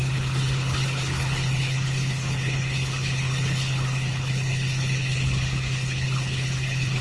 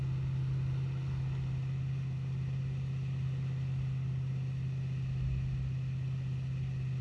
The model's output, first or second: first